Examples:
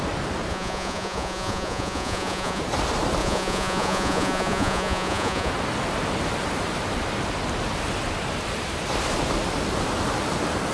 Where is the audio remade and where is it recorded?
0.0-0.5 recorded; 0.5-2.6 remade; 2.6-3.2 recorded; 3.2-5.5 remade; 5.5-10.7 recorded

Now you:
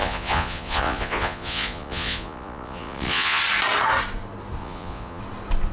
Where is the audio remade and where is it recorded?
0.0-3.4 remade; 3.4-4.6 recorded; 4.6-5.2 remade; 5.2-5.7 recorded

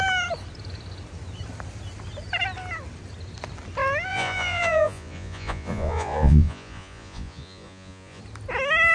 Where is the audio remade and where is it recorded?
0.0-4.1 recorded; 4.1-8.2 remade; 8.2-8.9 recorded

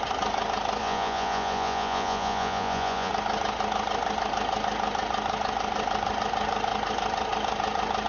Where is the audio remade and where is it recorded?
0.0-0.8 recorded; 0.8-3.1 remade; 3.1-8.1 recorded

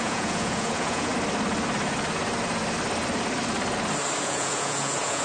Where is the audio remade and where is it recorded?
0.0-1.1 remade; 1.1-4.2 recorded; 4.2-5.2 remade

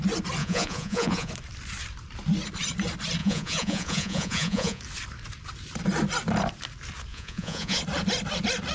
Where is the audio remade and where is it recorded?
0.0-0.4 recorded; 0.4-1.3 remade; 1.3-3.2 recorded; 3.2-4.8 remade; 4.8-7.1 recorded; 7.1-7.8 remade; 7.8-8.7 recorded

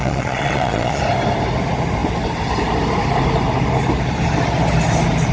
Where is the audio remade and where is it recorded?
0.0-1.0 remade; 1.0-5.3 recorded